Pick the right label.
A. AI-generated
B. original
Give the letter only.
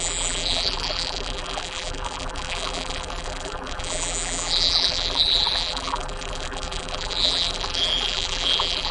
A